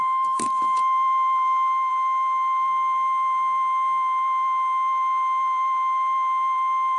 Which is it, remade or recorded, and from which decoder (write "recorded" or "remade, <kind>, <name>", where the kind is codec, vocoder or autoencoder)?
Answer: remade, vocoder, BigVGAN v2